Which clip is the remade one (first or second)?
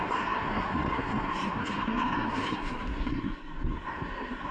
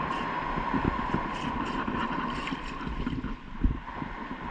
first